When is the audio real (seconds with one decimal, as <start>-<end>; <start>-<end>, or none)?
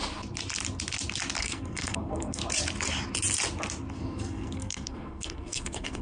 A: 0.0-1.4; 2.4-3.9